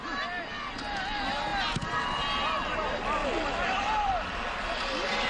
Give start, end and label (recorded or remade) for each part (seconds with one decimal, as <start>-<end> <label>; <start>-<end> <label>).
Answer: 0.0-5.3 recorded